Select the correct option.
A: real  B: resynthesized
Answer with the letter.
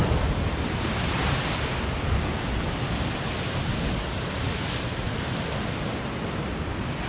A